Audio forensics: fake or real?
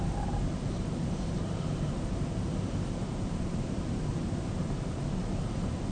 fake